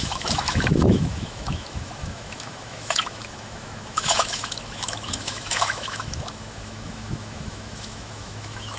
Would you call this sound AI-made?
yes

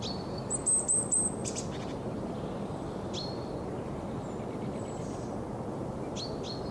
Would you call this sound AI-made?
no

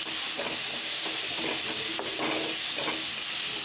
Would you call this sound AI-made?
no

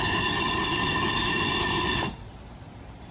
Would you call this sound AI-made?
no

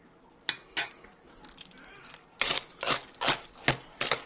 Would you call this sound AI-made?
no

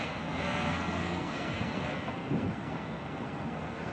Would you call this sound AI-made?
yes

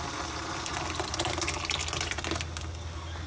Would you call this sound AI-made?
no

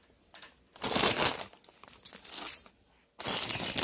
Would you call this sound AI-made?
no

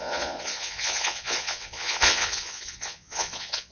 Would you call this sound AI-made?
yes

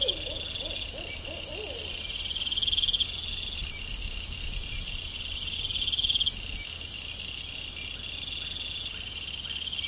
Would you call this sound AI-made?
no